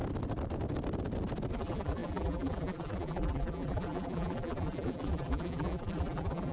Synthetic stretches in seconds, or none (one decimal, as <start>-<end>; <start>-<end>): 1.5-6.5